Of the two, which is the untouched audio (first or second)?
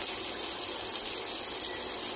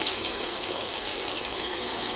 first